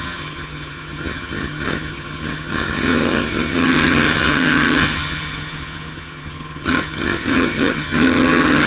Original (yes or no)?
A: no